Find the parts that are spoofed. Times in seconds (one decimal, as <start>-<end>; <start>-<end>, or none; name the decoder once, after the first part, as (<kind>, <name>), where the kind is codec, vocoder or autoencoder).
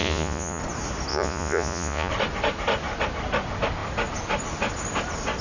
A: 0.0-0.6 (vocoder, Vocos); 1.1-2.1